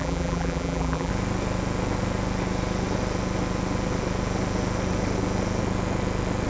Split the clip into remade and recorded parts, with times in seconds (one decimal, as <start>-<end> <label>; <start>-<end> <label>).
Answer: 0.0-1.1 remade; 1.1-6.5 recorded